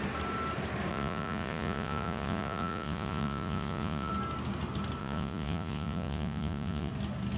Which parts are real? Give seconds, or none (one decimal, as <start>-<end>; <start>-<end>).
0.0-0.9; 4.1-5.0; 6.9-7.4